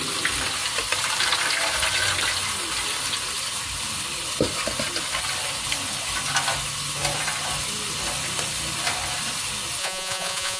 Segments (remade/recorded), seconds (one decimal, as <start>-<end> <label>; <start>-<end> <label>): 0.0-9.8 recorded; 9.8-10.6 remade